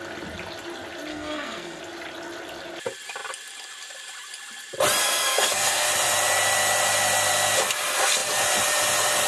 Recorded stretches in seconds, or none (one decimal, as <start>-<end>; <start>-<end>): 0.0-1.1; 1.8-5.0; 5.9-9.3